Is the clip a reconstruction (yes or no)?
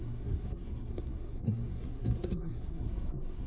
yes